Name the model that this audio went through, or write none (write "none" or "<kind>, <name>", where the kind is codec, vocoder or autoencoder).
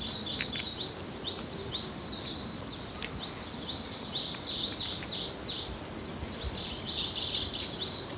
none